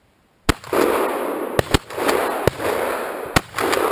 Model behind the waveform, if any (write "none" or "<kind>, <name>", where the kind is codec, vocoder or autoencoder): none